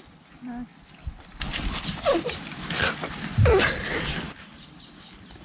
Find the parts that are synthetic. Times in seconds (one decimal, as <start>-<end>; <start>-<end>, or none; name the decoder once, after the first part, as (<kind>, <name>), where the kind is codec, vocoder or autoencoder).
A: none